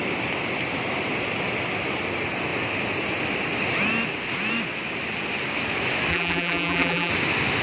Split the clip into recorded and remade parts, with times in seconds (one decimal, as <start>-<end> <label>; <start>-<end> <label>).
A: 0.0-6.1 recorded; 6.1-7.1 remade; 7.1-7.6 recorded